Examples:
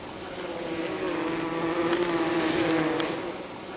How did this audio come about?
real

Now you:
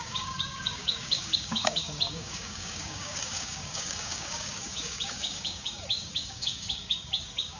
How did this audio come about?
fake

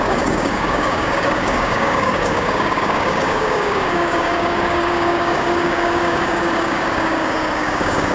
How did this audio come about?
fake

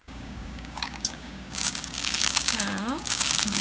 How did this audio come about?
fake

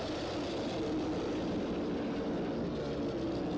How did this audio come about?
real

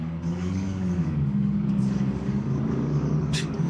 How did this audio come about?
fake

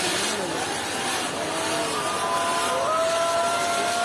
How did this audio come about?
real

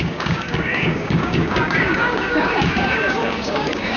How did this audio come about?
fake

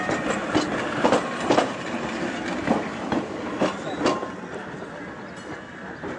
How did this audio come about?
real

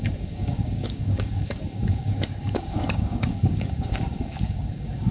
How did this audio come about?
fake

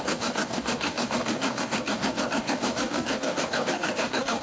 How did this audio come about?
fake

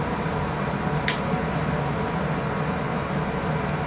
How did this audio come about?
real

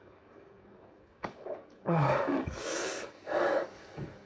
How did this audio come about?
fake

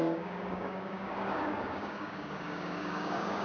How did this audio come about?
fake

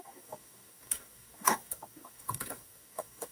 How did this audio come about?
fake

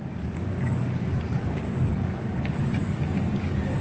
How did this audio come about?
fake